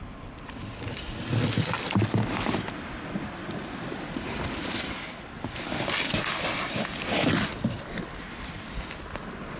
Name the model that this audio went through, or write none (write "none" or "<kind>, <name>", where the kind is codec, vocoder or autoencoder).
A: none